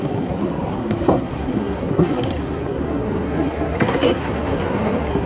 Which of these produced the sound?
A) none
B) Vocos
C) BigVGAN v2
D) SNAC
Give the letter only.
D